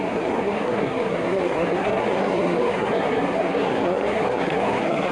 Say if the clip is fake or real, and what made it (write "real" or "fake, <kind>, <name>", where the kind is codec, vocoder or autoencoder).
fake, codec, SNAC